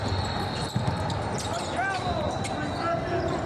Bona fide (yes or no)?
yes